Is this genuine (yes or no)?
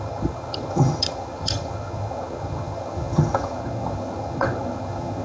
no